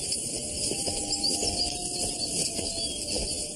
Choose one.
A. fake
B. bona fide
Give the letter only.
B